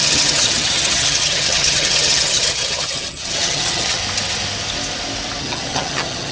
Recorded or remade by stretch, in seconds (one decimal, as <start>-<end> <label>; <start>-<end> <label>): 0.0-4.0 remade; 4.0-5.4 recorded; 5.4-6.3 remade